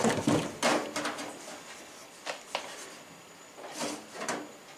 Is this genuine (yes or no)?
yes